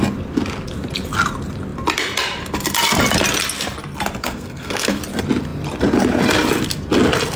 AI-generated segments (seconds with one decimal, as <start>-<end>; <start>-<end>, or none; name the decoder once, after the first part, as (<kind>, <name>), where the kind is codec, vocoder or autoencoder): 4.2-5.0 (codec, SNAC)